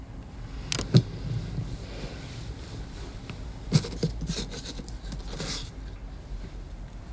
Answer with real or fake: real